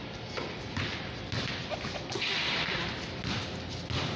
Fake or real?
real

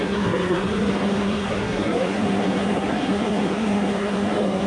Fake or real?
fake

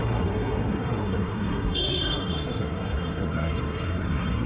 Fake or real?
fake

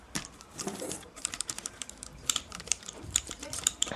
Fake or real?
fake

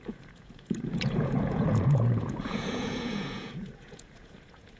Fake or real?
fake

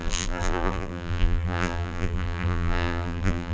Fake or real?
fake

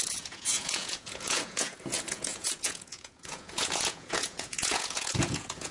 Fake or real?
fake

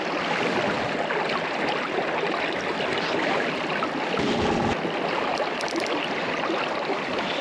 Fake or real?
real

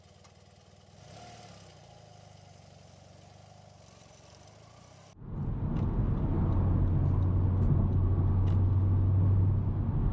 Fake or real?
real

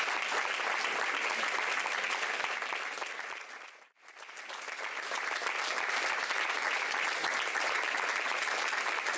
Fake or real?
real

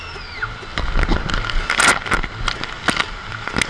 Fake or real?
real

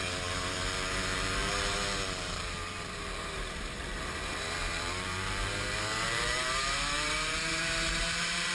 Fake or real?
fake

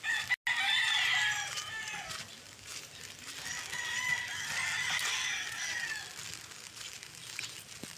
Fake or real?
real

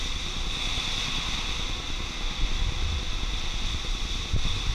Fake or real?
real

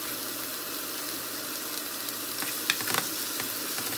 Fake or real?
real